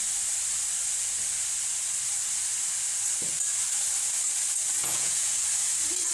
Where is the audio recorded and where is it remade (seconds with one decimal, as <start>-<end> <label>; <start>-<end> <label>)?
0.0-4.8 recorded; 4.8-5.4 remade; 5.4-6.1 recorded